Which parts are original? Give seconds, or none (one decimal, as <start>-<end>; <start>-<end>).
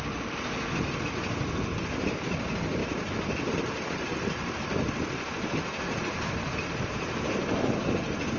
0.0-8.4